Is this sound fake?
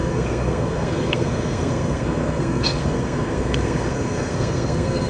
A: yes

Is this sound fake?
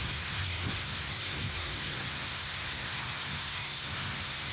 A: yes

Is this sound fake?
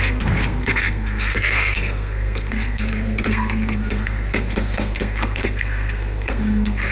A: yes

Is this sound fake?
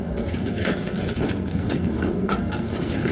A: yes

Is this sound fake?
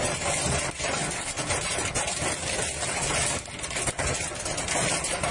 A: no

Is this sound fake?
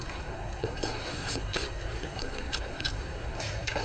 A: yes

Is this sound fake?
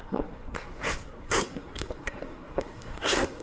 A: yes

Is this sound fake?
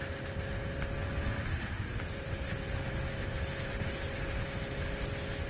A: no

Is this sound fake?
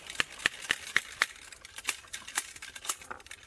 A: no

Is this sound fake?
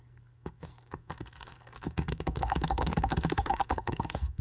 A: yes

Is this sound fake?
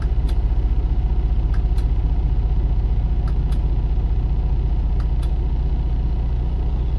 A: no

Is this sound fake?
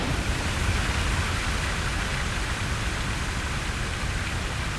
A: no